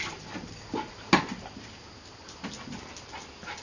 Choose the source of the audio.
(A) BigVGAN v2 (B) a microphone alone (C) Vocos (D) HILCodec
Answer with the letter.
B